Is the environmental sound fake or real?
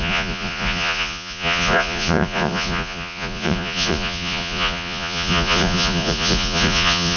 fake